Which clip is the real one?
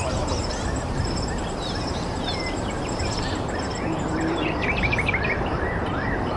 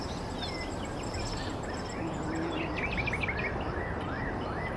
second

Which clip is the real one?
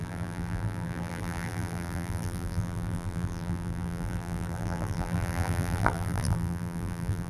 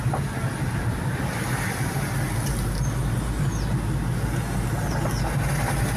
second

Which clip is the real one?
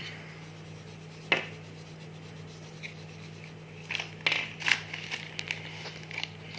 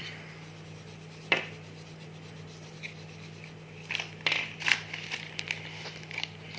first